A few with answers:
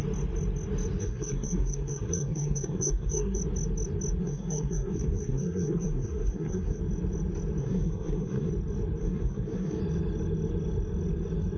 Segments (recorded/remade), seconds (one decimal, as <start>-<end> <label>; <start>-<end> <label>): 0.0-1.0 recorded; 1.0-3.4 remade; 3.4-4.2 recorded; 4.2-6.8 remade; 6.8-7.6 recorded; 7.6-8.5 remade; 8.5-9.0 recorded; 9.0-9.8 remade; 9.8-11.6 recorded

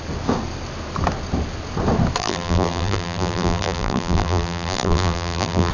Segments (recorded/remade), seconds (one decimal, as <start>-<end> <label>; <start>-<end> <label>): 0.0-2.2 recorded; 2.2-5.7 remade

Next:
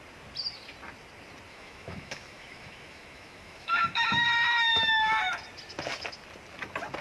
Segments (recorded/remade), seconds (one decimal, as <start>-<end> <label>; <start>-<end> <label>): 0.0-1.5 recorded; 1.5-5.2 remade; 5.2-7.0 recorded